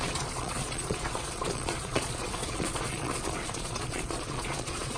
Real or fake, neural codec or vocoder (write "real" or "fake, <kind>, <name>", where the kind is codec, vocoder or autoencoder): fake, vocoder, Vocos